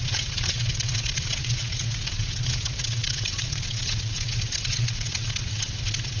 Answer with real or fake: fake